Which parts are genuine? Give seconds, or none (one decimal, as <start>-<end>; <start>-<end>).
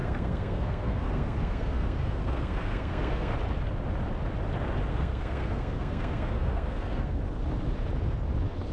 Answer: 3.3-4.9; 7.2-8.7